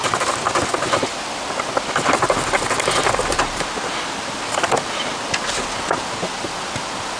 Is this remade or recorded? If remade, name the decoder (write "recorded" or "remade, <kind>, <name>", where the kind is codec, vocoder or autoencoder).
recorded